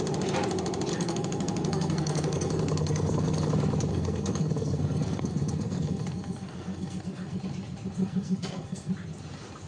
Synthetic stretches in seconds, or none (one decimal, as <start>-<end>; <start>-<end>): 0.9-3.5; 3.9-7.4; 8.0-8.9